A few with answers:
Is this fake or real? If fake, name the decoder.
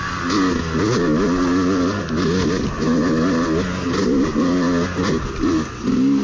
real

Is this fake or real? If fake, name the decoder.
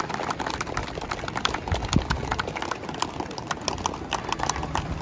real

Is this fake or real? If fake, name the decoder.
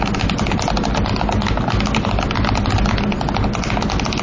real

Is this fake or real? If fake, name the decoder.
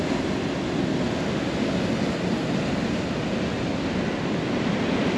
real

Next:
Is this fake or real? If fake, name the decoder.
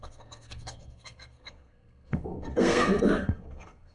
fake, codec, SNAC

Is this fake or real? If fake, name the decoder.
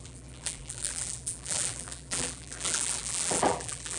fake, vocoder, BigVGAN v2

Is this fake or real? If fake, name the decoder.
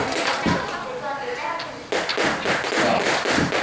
real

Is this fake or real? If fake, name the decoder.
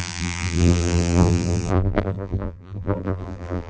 fake, vocoder, BigVGAN v2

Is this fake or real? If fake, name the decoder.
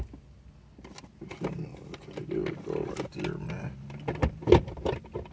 real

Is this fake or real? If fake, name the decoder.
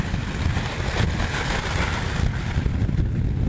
real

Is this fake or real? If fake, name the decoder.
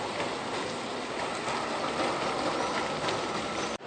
real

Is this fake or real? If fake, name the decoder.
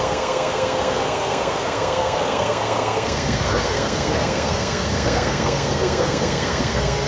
fake, codec, SNAC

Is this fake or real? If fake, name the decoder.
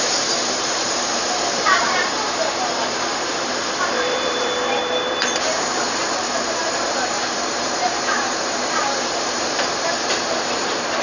fake, vocoder, BigVGAN v2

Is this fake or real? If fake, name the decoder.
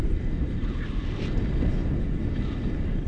real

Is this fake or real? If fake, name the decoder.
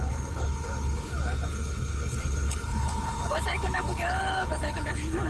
fake, codec, HILCodec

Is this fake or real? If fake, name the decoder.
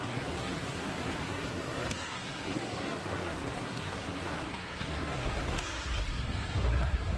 fake, codec, SNAC